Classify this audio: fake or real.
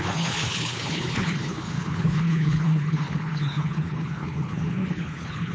fake